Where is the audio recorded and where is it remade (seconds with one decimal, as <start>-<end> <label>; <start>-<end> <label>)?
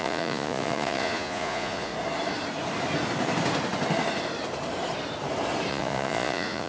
0.0-1.9 remade; 1.9-5.7 recorded; 5.7-6.7 remade